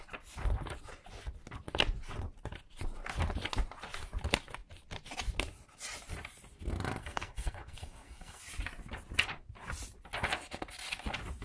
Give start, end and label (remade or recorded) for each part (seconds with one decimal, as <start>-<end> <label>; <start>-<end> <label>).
0.0-7.0 recorded; 7.0-8.4 remade; 8.4-11.4 recorded

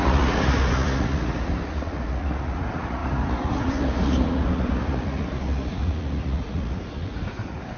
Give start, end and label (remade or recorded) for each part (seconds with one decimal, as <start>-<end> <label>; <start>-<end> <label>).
0.0-7.8 remade

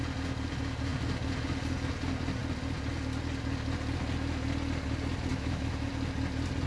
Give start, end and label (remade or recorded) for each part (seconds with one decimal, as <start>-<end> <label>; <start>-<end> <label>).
0.0-5.3 recorded; 5.3-5.9 remade; 5.9-6.7 recorded

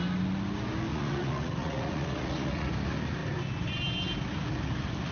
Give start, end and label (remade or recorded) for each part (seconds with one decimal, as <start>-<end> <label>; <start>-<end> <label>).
0.0-0.9 recorded; 0.9-2.7 remade; 2.7-5.1 recorded

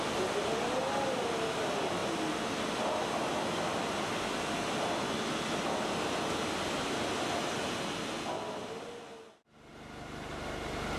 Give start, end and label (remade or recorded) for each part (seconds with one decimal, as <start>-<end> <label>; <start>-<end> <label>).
0.0-9.7 recorded; 9.7-11.0 remade